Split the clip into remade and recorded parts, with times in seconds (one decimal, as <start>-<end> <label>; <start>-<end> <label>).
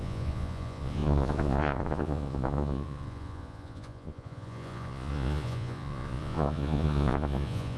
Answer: 0.0-7.8 remade